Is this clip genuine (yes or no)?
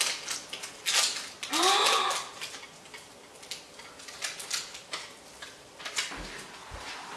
yes